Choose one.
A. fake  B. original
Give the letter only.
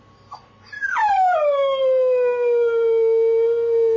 B